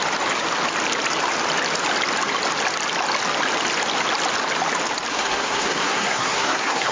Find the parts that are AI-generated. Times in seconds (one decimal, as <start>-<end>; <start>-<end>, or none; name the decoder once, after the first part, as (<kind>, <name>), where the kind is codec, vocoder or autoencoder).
5.1-6.9 (codec, SNAC)